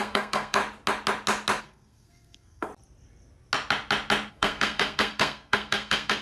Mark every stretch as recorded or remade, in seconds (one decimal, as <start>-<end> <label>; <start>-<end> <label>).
0.0-0.6 remade; 0.6-1.6 recorded; 1.6-2.7 remade; 2.7-4.3 recorded; 4.3-6.2 remade